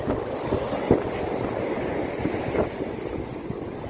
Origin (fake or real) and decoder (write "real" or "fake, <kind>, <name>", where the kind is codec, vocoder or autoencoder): real